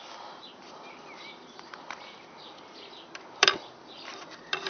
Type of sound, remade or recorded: remade